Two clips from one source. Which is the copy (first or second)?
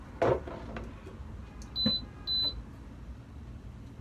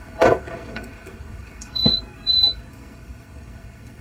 second